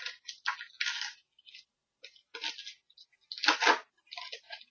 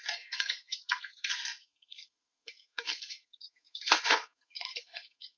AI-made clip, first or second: second